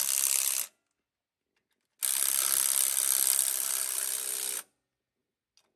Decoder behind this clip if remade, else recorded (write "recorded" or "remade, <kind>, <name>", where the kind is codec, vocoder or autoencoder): recorded